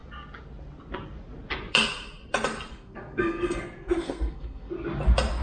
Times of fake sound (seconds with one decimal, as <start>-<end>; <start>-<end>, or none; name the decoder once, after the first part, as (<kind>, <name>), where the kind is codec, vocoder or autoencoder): 2.7-4.7 (codec, SNAC)